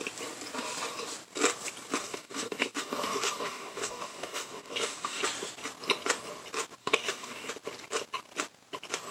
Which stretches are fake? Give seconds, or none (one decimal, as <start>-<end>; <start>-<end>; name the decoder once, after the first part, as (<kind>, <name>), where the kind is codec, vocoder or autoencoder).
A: 2.0-5.2 (codec, DAC); 6.8-7.5